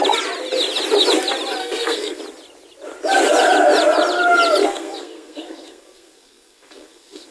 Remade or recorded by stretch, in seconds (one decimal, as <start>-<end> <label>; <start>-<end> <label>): 0.0-1.6 recorded; 1.6-2.2 remade; 2.2-4.6 recorded; 4.6-7.3 remade